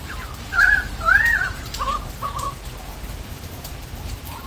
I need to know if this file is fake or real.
fake